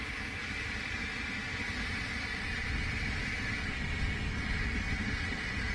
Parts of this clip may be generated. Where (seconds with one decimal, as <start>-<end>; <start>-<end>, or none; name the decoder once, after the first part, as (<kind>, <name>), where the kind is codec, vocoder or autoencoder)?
none